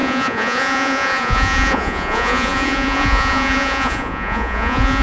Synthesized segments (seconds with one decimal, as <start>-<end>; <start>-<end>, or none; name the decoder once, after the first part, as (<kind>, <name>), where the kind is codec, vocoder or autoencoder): 0.0-5.0 (vocoder, Vocos)